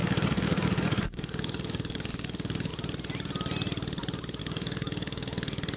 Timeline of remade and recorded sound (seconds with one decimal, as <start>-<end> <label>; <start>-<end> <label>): 0.0-2.7 remade; 2.7-4.4 recorded; 4.4-5.8 remade